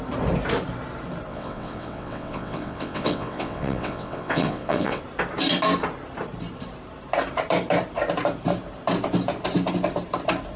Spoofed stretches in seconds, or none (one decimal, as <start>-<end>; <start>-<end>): 1.3-5.0